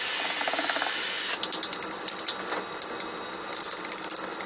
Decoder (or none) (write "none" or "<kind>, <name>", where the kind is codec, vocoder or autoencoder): none